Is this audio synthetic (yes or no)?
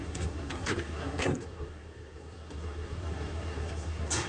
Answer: yes